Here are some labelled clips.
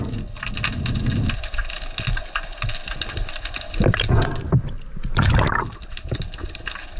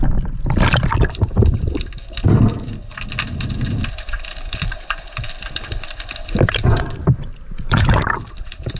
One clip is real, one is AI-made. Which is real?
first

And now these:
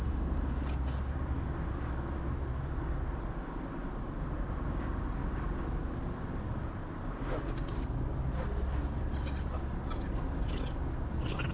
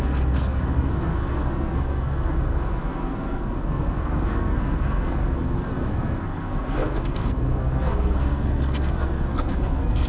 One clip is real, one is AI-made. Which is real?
first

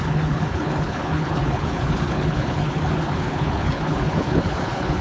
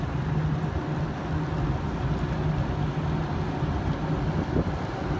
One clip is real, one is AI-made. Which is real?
second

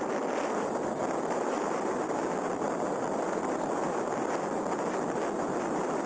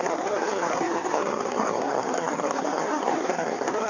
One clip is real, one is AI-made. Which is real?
first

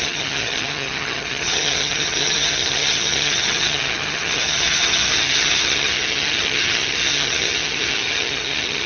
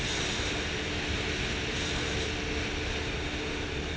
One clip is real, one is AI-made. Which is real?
second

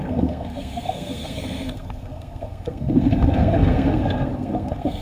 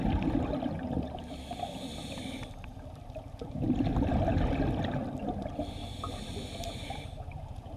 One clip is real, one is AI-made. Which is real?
second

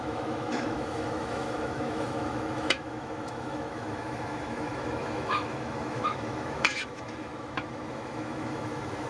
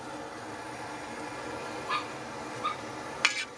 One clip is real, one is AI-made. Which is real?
second